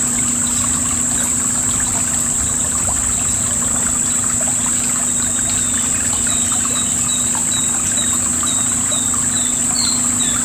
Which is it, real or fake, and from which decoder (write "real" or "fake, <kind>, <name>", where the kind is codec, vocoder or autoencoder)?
real